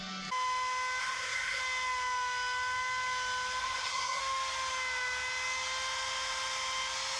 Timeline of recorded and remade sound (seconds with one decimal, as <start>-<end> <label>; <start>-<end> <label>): 0.0-1.0 recorded; 1.0-1.6 remade; 1.6-3.6 recorded; 3.6-4.2 remade; 4.2-7.2 recorded